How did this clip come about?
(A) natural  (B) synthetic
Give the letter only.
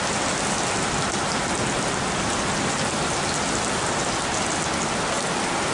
A